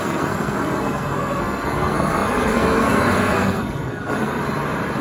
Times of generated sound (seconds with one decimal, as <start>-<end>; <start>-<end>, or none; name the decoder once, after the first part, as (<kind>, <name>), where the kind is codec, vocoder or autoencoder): 0.0-4.4 (codec, SNAC)